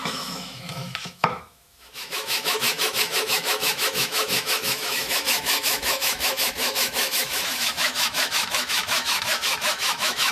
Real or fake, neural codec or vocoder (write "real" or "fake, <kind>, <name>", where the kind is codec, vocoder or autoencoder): fake, autoencoder, DAC-VAE